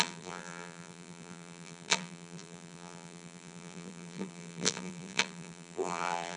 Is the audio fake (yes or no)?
yes